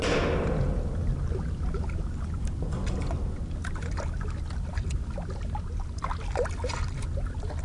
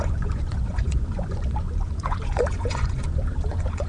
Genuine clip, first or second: first